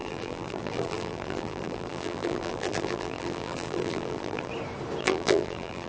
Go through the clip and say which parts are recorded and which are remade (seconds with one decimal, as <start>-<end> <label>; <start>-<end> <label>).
0.0-4.5 remade; 4.5-5.0 recorded; 5.0-5.9 remade